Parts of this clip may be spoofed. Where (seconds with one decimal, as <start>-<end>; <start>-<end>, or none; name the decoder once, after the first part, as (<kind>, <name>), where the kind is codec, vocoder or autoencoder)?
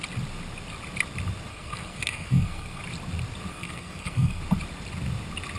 1.5-2.8 (codec, SNAC); 3.5-4.4